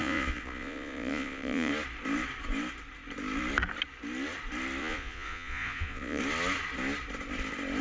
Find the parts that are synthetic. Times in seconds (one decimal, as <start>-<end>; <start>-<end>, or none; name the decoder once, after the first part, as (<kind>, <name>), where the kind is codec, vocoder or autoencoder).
0.0-1.7 (vocoder, Vocos); 4.8-6.2